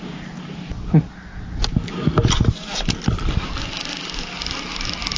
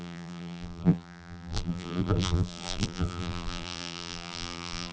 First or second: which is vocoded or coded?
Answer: second